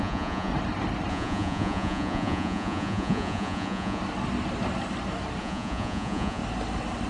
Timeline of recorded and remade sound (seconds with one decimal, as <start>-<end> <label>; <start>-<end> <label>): 0.0-0.5 remade; 0.5-1.1 recorded; 1.1-4.0 remade; 4.0-5.4 recorded; 5.4-6.4 remade; 6.4-7.1 recorded